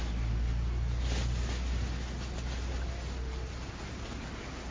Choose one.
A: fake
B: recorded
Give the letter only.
B